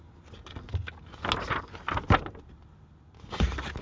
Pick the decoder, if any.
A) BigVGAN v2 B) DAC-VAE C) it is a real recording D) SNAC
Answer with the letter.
C